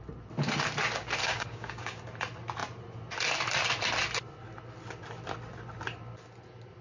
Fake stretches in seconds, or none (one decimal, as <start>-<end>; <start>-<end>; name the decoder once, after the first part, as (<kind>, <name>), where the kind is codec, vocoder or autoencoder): 1.2-2.0 (codec, DAC)